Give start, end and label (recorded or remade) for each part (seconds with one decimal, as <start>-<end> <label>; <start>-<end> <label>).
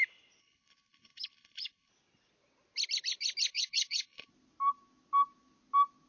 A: 0.0-0.4 recorded; 0.4-1.9 remade; 1.9-3.5 recorded; 3.5-4.3 remade; 4.3-6.1 recorded